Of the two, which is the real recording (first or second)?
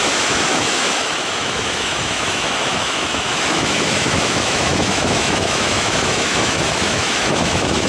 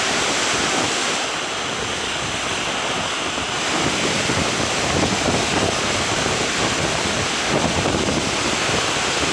second